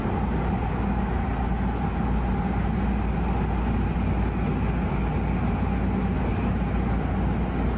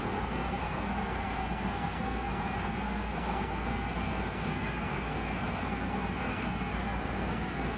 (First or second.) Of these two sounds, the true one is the first